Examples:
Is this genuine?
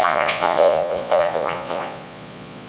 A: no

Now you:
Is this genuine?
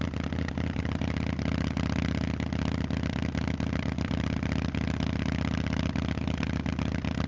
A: yes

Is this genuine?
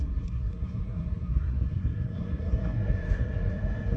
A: no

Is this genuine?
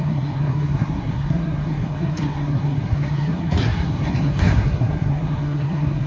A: no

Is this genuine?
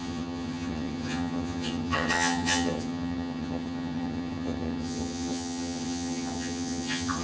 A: no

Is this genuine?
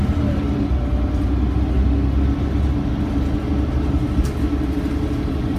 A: yes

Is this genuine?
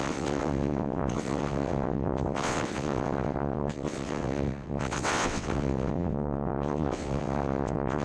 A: no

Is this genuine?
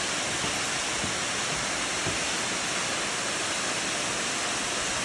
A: yes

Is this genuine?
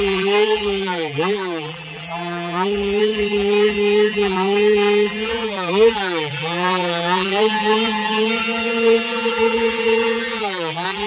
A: no